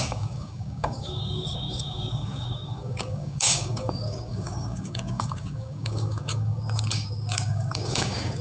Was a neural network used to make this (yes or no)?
yes